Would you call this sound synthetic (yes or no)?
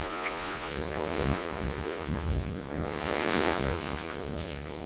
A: yes